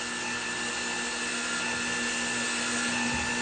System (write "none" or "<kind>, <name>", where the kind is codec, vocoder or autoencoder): none